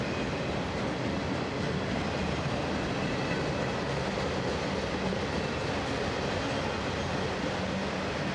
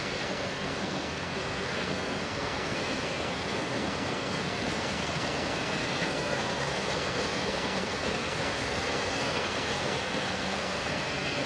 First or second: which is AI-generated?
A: second